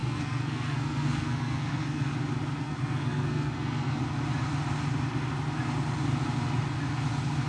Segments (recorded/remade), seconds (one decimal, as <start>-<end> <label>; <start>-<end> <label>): 0.0-2.1 remade; 2.1-2.6 recorded; 2.6-4.0 remade; 4.0-7.5 recorded